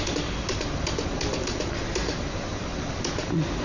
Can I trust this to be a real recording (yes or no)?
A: yes